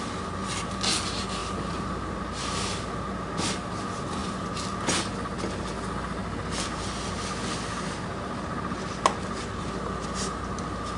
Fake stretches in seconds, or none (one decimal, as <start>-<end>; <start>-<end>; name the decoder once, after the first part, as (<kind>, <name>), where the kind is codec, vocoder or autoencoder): none